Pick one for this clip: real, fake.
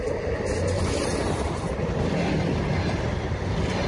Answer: real